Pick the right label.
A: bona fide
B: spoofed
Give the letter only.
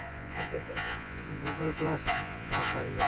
B